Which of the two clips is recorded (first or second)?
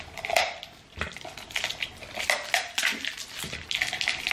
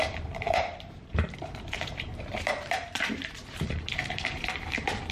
first